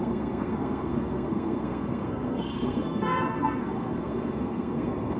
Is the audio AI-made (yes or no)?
yes